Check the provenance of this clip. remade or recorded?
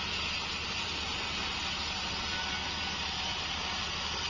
recorded